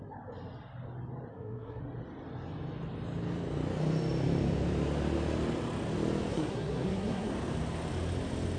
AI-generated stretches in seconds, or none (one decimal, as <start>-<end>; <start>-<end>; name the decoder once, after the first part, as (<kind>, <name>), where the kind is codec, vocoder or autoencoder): 1.3-1.8 (codec, SNAC); 6.3-7.3